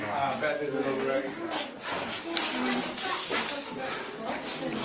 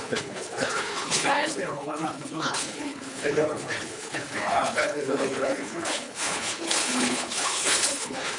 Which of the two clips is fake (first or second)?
second